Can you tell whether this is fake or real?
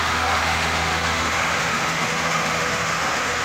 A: fake